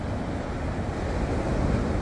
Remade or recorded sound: recorded